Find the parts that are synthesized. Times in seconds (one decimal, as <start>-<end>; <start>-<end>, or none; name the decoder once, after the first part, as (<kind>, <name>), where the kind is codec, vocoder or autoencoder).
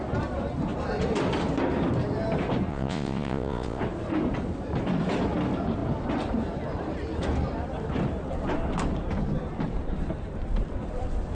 2.7-3.8 (vocoder, Vocos)